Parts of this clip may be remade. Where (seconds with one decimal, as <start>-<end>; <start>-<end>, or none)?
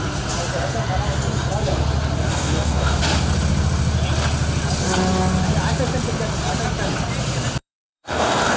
2.3-3.0; 7.6-8.6